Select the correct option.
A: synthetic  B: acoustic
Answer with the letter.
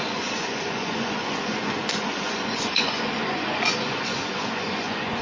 A